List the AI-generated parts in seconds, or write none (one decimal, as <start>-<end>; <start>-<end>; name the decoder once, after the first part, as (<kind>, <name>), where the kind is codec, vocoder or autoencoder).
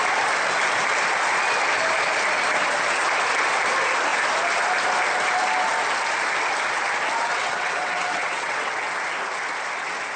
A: 7.4-8.9 (vocoder, WaveNeXt)